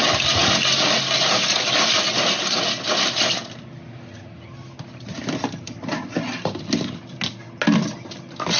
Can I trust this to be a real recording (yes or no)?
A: yes